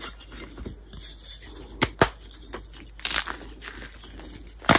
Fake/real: real